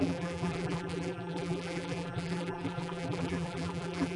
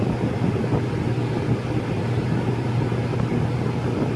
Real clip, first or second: second